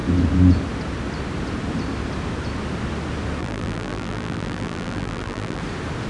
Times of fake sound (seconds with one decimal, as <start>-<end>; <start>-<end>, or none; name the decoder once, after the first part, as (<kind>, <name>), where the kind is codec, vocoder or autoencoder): 3.4-5.6 (vocoder, BigVGAN v2)